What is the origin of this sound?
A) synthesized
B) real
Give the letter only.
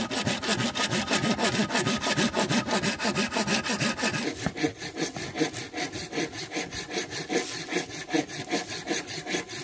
B